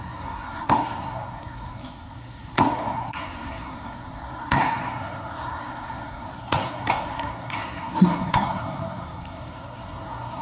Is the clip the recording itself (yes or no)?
no